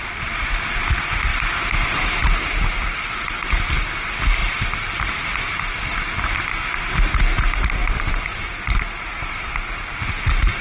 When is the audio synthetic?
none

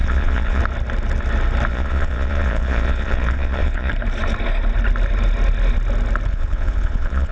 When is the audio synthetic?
0.0-0.6 (vocoder, Vocos); 1.7-3.9; 6.3-7.3

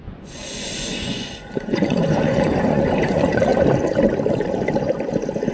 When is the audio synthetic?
0.0-3.5 (vocoder, Vocos)

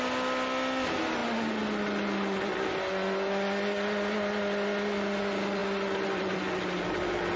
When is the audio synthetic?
none

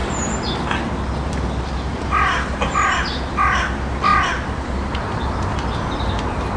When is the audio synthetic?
none